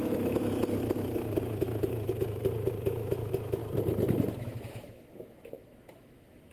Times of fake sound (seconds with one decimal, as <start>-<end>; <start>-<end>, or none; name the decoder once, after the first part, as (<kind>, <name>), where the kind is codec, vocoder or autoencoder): 0.0-3.6 (autoencoder, DAC-VAE); 4.4-6.5